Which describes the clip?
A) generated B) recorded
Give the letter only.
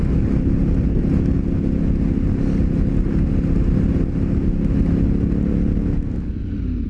B